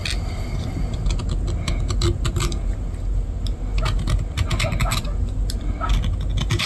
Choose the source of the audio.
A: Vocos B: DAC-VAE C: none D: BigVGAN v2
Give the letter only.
C